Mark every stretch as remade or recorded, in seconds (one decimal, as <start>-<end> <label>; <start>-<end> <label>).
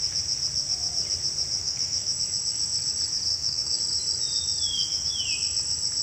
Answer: 0.0-1.6 recorded; 1.6-2.2 remade; 2.2-3.3 recorded; 3.3-3.8 remade; 3.8-4.7 recorded; 4.7-5.2 remade; 5.2-6.0 recorded